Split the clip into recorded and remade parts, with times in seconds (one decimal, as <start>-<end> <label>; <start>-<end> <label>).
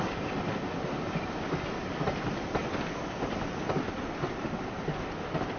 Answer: 0.0-5.6 recorded